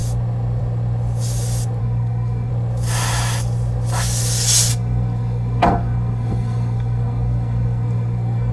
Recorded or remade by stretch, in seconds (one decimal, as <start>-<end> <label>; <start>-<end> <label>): 0.0-1.8 recorded; 1.8-2.5 remade; 2.5-4.7 recorded; 4.7-8.5 remade